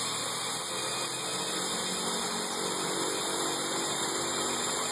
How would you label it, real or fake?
real